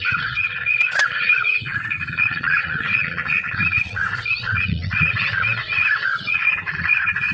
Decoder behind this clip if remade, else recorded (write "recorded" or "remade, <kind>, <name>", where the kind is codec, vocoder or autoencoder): remade, vocoder, Vocos